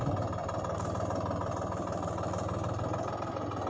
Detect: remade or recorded recorded